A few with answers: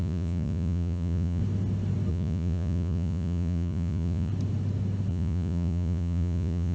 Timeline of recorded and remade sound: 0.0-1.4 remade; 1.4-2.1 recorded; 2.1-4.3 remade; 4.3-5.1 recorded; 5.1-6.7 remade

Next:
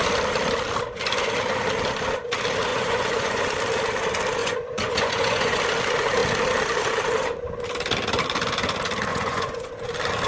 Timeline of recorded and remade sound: 0.0-2.7 recorded; 2.7-3.4 remade; 3.4-4.4 recorded; 4.4-5.6 remade; 5.6-9.1 recorded; 9.1-9.7 remade; 9.7-10.3 recorded

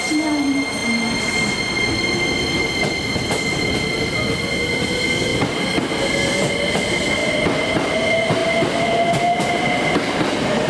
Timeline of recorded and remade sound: 0.0-10.7 recorded

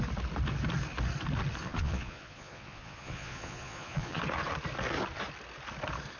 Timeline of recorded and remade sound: 0.0-1.6 recorded; 1.6-4.2 remade; 4.2-6.2 recorded